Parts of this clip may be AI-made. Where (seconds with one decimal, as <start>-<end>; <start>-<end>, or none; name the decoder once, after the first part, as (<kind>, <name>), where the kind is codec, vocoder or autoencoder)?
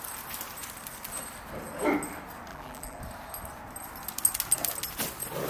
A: 2.5-3.0 (vocoder, BigVGAN v2)